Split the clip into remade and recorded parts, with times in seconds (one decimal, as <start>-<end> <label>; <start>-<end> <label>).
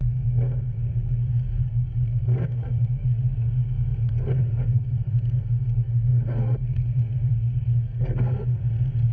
0.0-9.1 remade